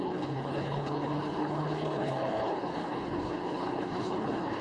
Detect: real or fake fake